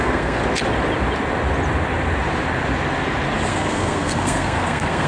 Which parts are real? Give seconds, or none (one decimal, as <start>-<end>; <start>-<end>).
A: 0.4-3.5